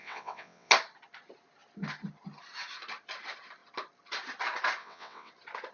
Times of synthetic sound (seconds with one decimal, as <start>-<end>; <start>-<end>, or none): 0.0-0.7; 4.8-5.3